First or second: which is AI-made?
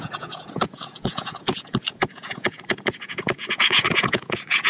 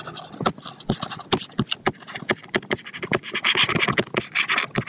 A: first